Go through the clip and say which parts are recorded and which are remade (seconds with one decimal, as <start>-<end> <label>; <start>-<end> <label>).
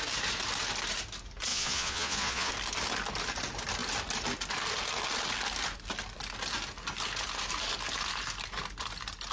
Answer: 0.0-1.5 recorded; 1.5-2.5 remade; 2.5-9.3 recorded